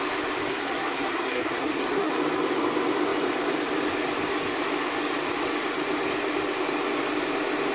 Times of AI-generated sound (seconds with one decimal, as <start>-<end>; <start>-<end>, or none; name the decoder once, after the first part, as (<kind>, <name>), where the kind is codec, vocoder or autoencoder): 0.5-2.1 (codec, SNAC)